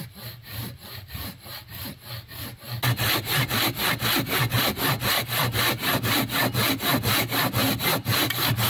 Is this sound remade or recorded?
recorded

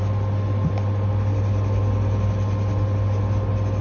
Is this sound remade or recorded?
recorded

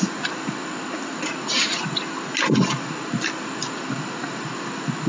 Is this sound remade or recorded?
recorded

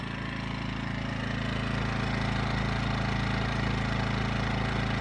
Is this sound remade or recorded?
recorded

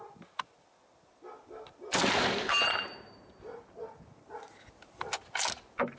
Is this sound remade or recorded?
recorded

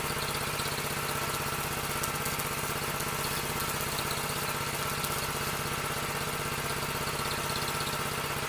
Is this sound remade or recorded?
recorded